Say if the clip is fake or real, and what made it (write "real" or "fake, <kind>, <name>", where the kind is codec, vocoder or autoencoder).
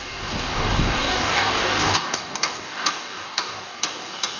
fake, codec, DAC